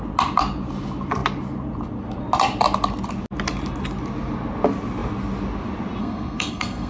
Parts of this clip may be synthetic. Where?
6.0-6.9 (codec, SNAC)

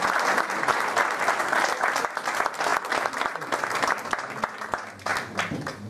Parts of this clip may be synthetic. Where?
none